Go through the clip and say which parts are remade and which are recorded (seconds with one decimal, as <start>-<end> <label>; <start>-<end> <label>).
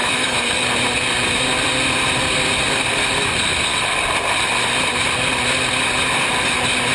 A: 0.0-0.5 remade; 0.5-6.9 recorded